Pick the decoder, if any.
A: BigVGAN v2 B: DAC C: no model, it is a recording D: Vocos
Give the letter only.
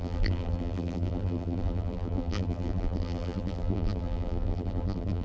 A